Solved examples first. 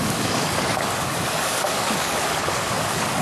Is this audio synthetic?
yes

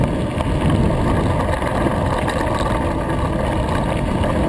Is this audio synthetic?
no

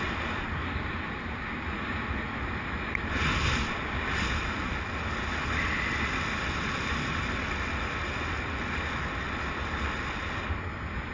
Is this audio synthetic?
no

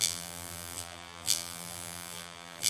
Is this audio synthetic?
yes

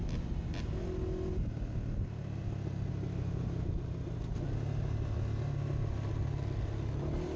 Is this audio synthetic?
no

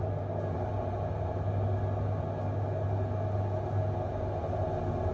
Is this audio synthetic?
no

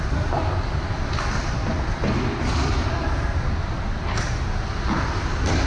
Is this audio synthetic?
yes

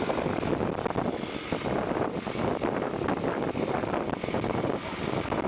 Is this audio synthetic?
no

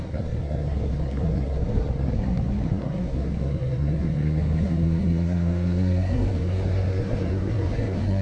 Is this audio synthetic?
yes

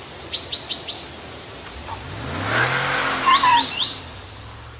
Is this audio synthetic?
no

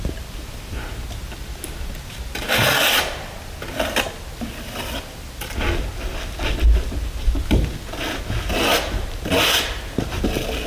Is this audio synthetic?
no